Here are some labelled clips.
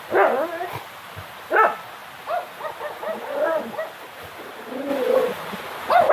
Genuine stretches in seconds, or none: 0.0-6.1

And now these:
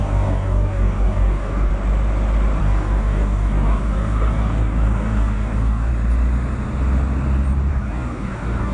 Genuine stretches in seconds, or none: 1.7-2.6; 5.9-7.7